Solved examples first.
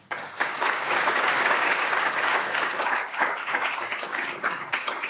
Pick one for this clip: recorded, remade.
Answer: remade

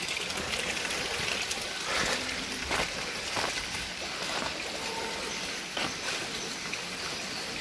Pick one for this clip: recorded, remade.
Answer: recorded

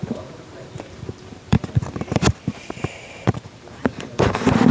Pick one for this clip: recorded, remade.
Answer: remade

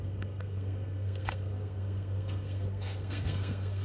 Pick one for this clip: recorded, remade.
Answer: remade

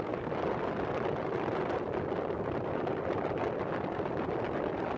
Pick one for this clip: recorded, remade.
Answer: recorded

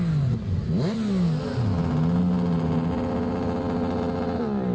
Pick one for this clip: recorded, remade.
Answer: recorded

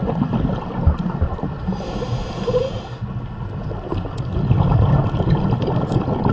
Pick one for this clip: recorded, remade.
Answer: recorded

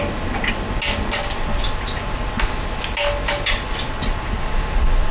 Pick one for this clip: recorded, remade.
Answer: recorded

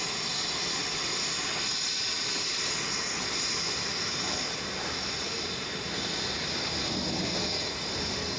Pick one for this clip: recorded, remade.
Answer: recorded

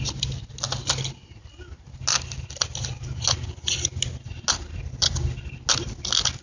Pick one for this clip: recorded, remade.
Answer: recorded